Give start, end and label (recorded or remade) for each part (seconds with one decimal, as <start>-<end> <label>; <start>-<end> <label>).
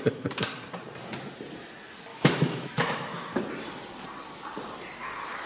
0.0-2.1 recorded; 2.1-3.4 remade; 3.4-5.5 recorded